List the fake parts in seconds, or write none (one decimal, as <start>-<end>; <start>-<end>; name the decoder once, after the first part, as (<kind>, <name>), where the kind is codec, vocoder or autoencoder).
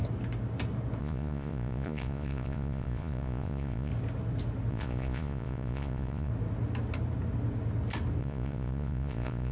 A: 1.0-3.9 (vocoder, Vocos); 4.7-6.3; 8.2-9.5